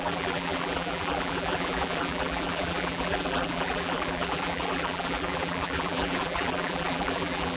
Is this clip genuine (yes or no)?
no